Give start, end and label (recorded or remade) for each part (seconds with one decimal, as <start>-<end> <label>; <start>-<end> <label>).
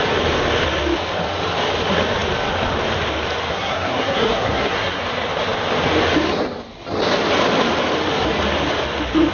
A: 0.0-3.5 recorded; 3.5-5.0 remade; 5.0-9.3 recorded